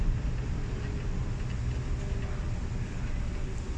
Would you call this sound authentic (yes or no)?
yes